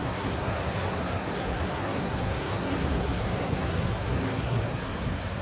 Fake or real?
fake